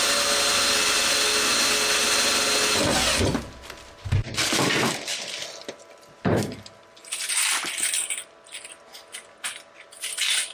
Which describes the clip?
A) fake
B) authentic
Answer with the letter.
B